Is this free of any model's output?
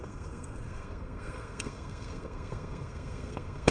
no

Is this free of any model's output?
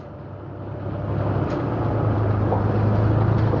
yes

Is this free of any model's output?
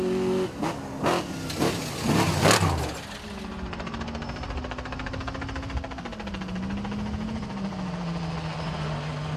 yes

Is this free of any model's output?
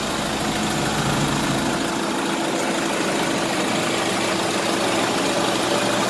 yes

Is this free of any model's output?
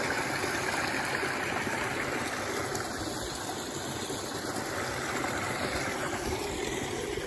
yes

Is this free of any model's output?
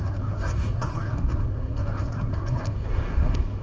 no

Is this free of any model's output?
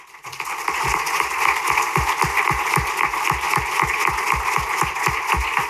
yes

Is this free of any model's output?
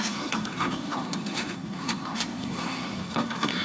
no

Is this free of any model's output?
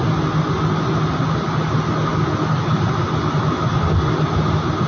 yes